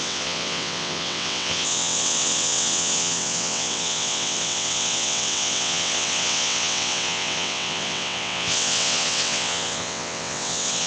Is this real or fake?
fake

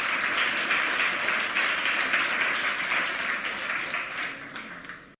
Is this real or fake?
real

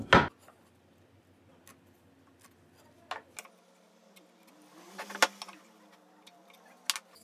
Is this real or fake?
real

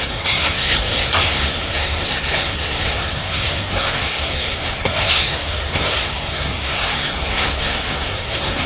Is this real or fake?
fake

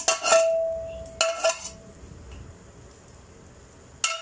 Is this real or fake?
real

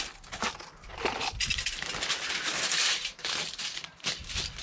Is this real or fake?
real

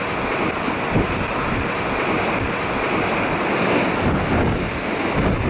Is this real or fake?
real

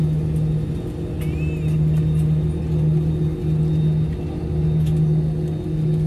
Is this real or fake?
real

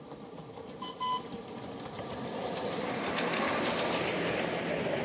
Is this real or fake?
real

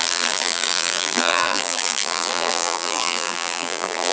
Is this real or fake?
fake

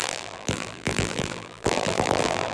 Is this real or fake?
fake